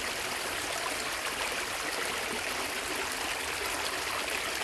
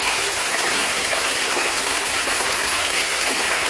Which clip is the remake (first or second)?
second